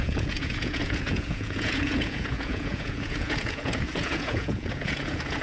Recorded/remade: remade